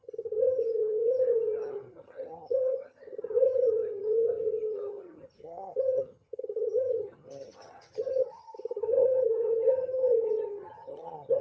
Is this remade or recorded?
remade